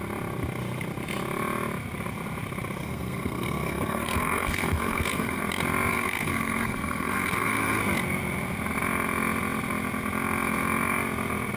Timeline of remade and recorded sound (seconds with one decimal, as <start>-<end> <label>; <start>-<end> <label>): 0.0-2.8 recorded; 2.8-5.4 remade; 5.4-5.9 recorded; 5.9-7.8 remade; 7.8-11.6 recorded